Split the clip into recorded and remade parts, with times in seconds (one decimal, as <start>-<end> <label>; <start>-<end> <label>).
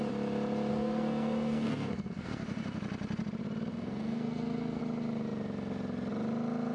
0.0-0.7 recorded; 0.7-2.8 remade; 2.8-3.7 recorded; 3.7-4.8 remade; 4.8-6.7 recorded